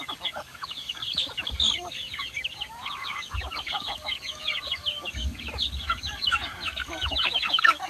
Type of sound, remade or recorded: remade